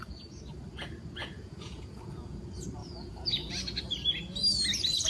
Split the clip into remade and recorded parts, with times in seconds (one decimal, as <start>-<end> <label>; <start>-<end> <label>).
0.0-1.2 recorded; 1.2-2.4 remade; 2.4-2.8 recorded; 2.8-3.5 remade; 3.5-5.1 recorded